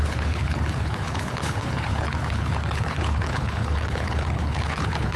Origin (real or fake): fake